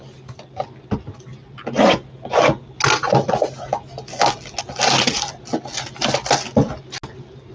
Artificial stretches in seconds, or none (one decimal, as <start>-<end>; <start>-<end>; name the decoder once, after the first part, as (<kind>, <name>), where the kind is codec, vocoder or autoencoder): none